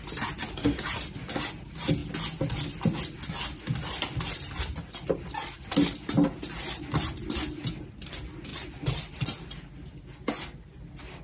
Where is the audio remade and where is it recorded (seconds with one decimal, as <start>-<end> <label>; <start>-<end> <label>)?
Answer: 0.0-11.2 recorded